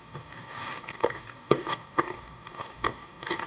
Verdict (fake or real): fake